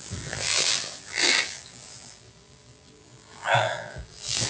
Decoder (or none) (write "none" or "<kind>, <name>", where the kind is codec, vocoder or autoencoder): vocoder, BigVGAN v2